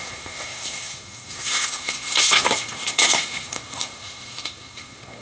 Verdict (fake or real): fake